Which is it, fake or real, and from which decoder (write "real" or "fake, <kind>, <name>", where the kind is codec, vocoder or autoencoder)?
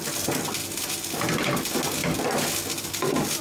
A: real